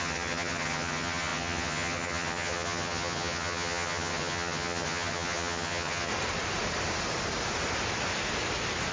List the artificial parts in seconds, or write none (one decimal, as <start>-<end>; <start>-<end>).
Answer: 0.0-6.1

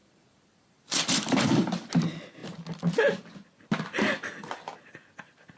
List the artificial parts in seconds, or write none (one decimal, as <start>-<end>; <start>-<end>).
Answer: 0.0-1.9

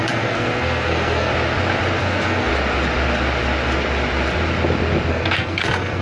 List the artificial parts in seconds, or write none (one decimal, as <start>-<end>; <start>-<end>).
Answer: 0.0-1.3; 2.0-2.5; 5.1-6.0

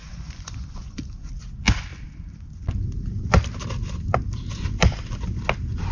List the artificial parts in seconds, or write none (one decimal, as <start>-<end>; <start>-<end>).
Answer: 0.0-1.3

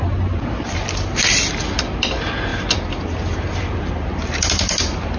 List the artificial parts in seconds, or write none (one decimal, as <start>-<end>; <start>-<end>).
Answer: none

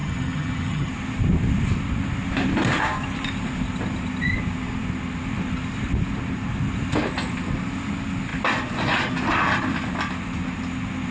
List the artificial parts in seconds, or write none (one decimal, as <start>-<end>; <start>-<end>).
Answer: 0.0-0.9